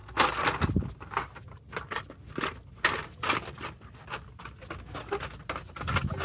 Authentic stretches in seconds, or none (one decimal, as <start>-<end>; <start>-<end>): 0.0-6.2